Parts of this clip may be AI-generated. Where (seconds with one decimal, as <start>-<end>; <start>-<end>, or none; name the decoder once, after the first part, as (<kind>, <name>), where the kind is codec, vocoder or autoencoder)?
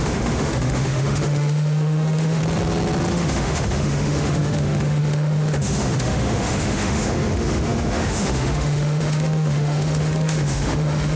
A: 0.0-2.4 (autoencoder, DAC-VAE); 3.1-11.2